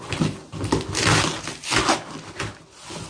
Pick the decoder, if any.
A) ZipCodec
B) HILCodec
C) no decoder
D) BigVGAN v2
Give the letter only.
C